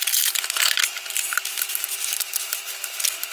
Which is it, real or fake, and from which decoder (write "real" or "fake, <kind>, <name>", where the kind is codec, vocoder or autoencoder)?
real